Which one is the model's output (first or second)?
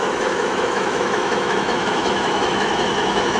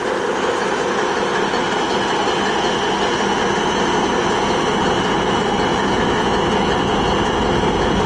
first